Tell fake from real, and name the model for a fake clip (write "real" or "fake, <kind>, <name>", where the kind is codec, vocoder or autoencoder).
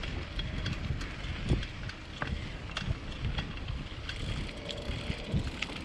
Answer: real